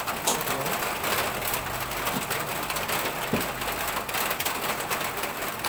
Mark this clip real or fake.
real